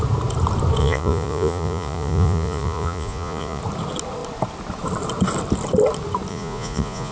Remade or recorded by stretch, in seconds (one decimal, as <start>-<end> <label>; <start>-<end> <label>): 0.0-0.8 recorded; 0.8-3.6 remade; 3.6-6.3 recorded; 6.3-7.1 remade